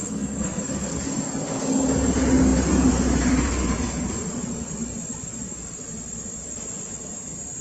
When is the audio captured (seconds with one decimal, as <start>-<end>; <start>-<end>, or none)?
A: 1.0-7.6